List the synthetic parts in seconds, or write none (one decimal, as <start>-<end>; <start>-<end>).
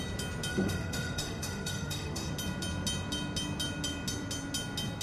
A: 0.5-2.3